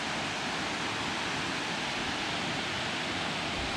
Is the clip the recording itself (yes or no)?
yes